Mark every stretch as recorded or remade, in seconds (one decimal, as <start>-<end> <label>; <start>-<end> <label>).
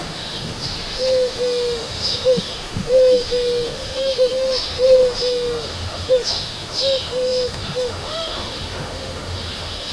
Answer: 0.0-9.9 remade